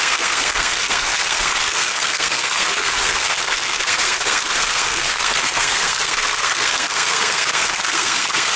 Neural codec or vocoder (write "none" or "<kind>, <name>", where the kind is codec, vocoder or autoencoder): codec, SNAC